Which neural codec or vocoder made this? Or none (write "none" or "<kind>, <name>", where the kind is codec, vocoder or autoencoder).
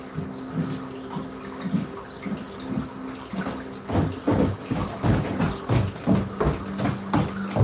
none